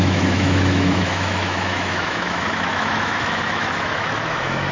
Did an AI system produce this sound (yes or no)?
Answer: yes